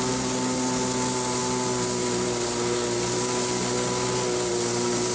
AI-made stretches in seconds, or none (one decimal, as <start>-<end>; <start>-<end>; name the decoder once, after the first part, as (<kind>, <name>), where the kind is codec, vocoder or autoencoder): none